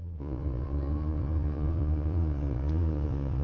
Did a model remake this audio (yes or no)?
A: yes